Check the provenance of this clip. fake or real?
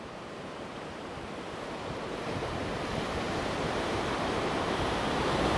fake